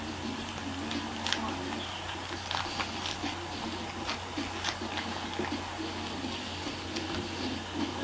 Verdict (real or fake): real